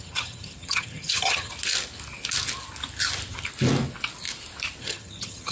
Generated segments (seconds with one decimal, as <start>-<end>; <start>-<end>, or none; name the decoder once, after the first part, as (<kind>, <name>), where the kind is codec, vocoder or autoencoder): 0.0-1.5 (vocoder, HiFi-GAN); 4.8-5.5